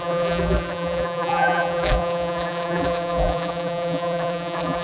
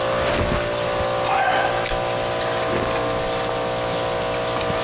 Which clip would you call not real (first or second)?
first